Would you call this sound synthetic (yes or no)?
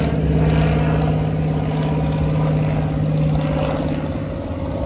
no